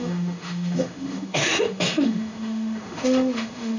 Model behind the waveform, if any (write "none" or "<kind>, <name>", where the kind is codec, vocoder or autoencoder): autoencoder, DAC-VAE